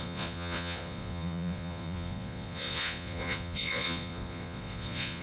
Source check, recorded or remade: remade